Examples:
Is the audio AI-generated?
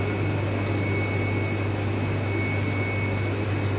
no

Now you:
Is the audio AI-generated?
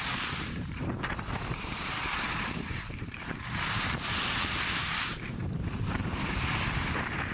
yes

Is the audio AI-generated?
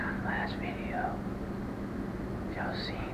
no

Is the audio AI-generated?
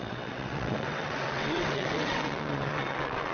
yes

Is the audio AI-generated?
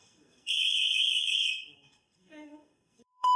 yes